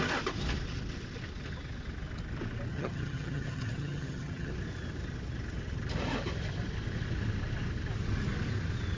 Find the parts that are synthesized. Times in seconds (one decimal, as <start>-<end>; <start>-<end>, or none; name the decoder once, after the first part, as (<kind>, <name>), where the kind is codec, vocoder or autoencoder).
2.7-4.5 (vocoder, HiFi-GAN)